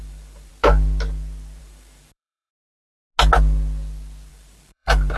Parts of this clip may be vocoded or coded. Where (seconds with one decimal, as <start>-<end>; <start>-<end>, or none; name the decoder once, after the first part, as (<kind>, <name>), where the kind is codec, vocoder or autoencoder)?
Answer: 0.0-0.5 (vocoder, BigVGAN v2); 1.6-2.5; 4.3-5.2